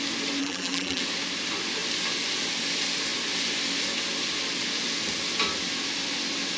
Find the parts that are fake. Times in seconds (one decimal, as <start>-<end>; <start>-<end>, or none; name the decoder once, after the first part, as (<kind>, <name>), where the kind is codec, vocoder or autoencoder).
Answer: 0.4-1.0 (vocoder, BigVGAN v2)